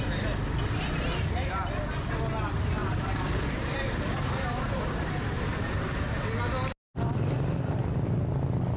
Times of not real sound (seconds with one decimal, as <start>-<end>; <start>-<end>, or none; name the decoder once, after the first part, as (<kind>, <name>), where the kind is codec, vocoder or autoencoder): 2.8-6.4 (vocoder, BigVGAN v2)